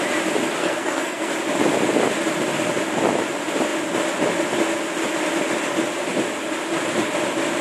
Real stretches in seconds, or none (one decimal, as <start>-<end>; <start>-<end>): 0.0-0.6; 1.3-7.6